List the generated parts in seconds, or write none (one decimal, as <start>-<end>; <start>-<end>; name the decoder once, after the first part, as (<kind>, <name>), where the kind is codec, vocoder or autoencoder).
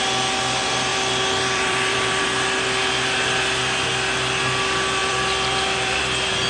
0.9-2.2 (vocoder, BigVGAN v2); 5.0-6.0